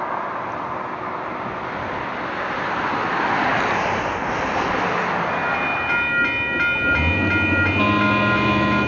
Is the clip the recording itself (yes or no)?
yes